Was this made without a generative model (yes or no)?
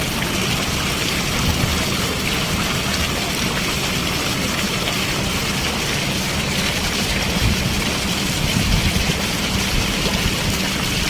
yes